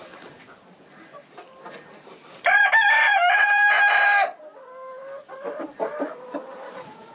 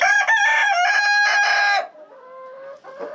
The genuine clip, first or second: second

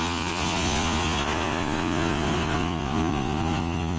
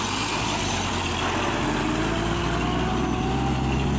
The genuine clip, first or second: second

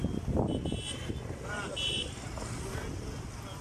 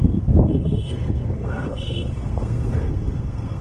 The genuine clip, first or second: first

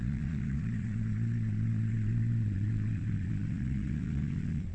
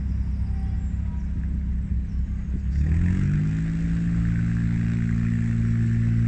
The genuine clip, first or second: second